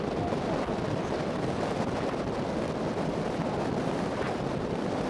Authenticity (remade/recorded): recorded